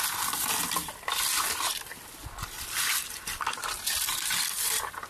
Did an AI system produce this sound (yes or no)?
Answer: yes